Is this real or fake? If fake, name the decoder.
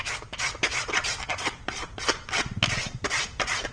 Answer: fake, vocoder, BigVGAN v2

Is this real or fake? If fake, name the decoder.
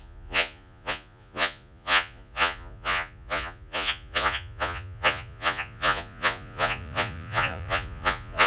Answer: fake, vocoder, Vocos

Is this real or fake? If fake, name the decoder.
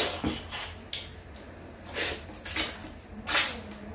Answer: real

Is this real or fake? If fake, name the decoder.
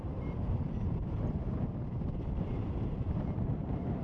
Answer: fake, vocoder, BigVGAN v2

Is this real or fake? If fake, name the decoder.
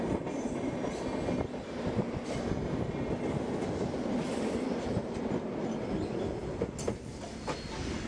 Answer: real